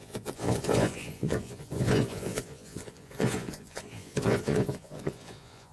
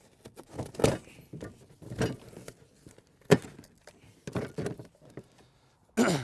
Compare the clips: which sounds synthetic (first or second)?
first